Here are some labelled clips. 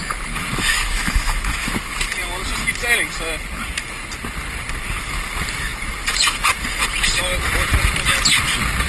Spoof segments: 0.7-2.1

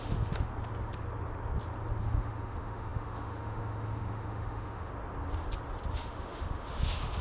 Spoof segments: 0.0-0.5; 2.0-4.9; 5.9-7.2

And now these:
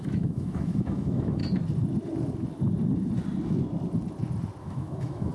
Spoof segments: 0.0-1.4; 4.6-5.3

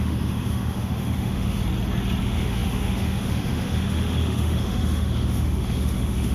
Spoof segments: 0.0-1.6; 2.2-6.3

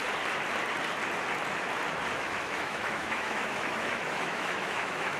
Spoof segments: 2.1-5.2

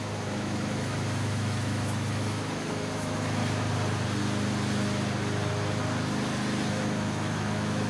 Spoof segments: 0.0-3.4; 6.7-7.9

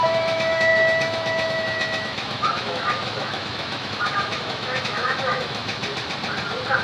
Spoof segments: 0.0-5.8